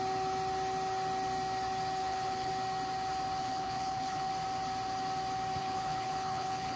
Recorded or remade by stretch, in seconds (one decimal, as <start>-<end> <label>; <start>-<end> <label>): 0.0-2.0 recorded; 2.0-2.5 remade; 2.5-3.4 recorded; 3.4-4.3 remade; 4.3-5.6 recorded; 5.6-6.8 remade